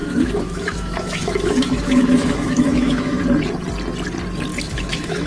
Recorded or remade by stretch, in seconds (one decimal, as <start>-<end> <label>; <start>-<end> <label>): 0.0-3.2 remade; 3.2-4.5 recorded; 4.5-5.3 remade